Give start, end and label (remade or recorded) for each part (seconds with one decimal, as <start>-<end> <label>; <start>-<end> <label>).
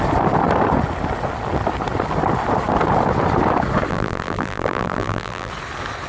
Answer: 0.0-3.9 recorded; 3.9-5.5 remade; 5.5-6.1 recorded